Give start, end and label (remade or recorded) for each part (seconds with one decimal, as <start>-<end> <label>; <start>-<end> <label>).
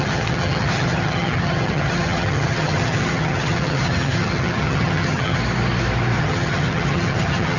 0.0-5.4 remade; 5.4-6.2 recorded; 6.2-7.6 remade